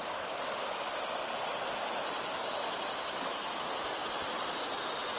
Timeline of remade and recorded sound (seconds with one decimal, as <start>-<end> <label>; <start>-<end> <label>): 0.0-4.0 recorded; 4.0-4.6 remade; 4.6-5.2 recorded